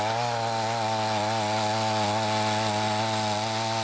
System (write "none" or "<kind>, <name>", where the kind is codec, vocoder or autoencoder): none